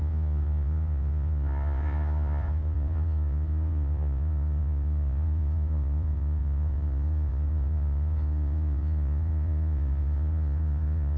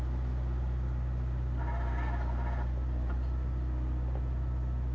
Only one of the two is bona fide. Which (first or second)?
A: second